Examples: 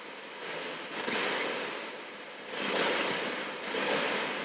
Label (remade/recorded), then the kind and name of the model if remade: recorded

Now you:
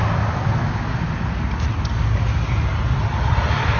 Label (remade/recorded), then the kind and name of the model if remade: recorded